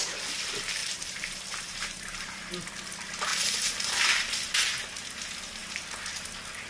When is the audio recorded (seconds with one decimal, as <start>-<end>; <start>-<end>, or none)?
0.0-0.8; 2.7-3.3; 3.9-6.7